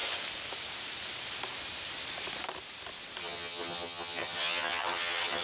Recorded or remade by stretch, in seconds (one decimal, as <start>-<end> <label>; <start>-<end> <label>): 0.0-3.2 recorded; 3.2-5.4 remade